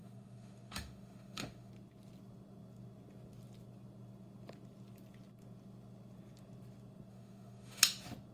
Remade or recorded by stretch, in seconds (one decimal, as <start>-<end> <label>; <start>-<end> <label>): 0.0-1.7 remade; 1.7-7.1 recorded; 7.1-7.8 remade; 7.8-8.3 recorded

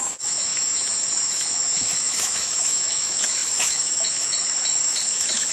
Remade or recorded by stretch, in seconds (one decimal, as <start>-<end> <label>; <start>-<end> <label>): 0.0-5.5 remade

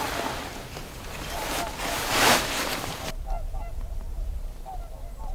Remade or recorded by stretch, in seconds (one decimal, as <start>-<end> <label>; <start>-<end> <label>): 0.0-0.5 recorded; 0.5-1.3 remade; 1.3-2.1 recorded; 2.1-4.8 remade; 4.8-5.3 recorded

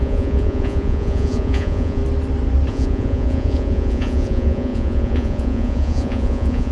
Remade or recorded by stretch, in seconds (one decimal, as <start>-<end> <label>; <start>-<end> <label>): 0.0-2.0 remade; 2.0-2.7 recorded; 2.7-6.7 remade

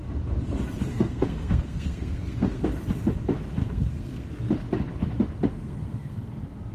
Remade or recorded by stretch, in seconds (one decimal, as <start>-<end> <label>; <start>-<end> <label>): 0.0-0.9 recorded; 0.9-2.7 remade; 2.7-3.6 recorded; 3.6-4.3 remade; 4.3-5.5 recorded; 5.5-6.3 remade; 6.3-6.7 recorded

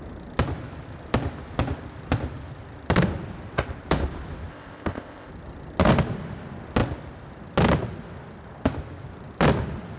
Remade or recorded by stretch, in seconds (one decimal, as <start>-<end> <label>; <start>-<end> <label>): 0.0-4.5 recorded; 4.5-5.3 remade; 5.3-10.0 recorded

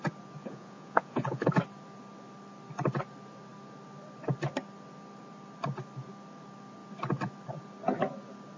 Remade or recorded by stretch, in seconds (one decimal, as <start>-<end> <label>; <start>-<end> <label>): 0.0-0.4 recorded; 0.4-1.5 remade; 1.5-8.6 recorded